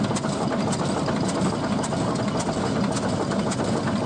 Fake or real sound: real